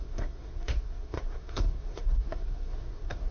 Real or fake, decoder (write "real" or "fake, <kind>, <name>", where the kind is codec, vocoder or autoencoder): fake, codec, SNAC